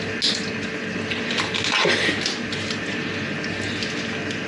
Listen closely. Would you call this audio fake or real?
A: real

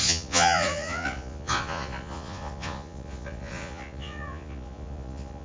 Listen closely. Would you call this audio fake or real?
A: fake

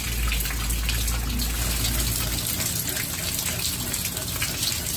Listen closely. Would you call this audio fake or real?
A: real